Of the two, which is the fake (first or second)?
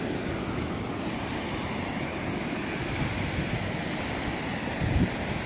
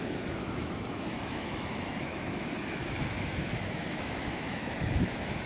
second